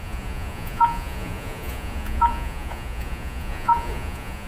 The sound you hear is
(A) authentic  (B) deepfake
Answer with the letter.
B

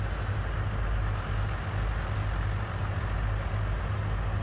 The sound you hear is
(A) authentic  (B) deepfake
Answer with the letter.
A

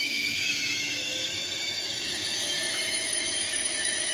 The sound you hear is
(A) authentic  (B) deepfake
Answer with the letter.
B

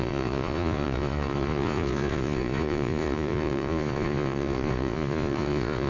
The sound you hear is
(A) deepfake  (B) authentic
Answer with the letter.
A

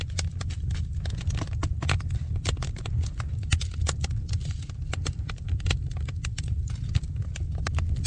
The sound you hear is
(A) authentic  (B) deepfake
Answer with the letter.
A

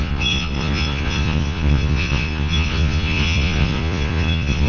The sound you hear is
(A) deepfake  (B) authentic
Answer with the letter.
A